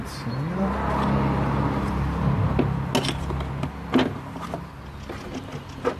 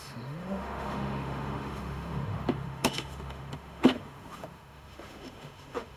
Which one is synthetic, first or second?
second